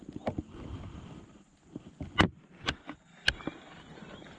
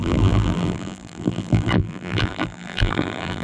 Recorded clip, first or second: first